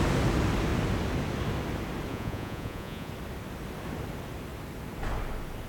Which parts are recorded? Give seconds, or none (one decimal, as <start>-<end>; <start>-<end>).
0.0-2.1; 3.1-5.7